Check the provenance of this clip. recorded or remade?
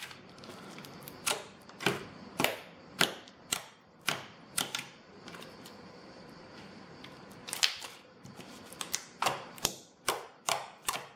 remade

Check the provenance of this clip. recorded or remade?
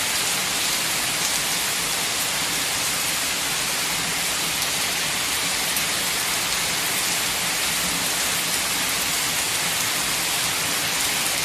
recorded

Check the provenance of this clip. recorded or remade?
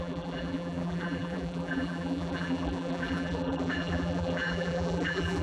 remade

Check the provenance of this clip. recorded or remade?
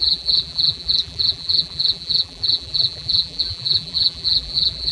remade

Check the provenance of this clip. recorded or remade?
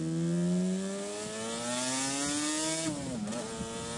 recorded